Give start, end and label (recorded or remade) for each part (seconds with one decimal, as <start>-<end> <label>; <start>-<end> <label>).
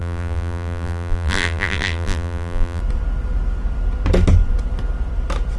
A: 0.0-2.8 remade; 2.8-5.6 recorded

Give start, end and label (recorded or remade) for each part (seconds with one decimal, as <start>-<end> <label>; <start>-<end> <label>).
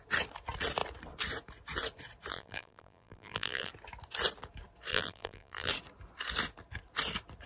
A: 0.0-2.3 recorded; 2.3-3.7 remade; 3.7-4.9 recorded; 4.9-5.7 remade; 5.7-7.5 recorded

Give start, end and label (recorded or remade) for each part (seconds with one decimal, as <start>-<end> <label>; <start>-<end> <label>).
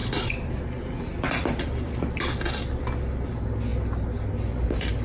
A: 0.0-0.6 remade; 0.6-1.1 recorded; 1.1-2.2 remade; 2.2-5.0 recorded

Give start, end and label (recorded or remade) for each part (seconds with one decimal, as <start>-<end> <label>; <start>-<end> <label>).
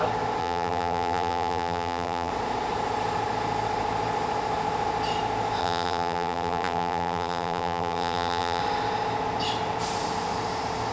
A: 0.0-0.4 recorded; 0.4-2.3 remade; 2.3-5.6 recorded; 5.6-8.6 remade; 8.6-10.9 recorded